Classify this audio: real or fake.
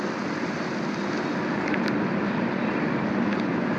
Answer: real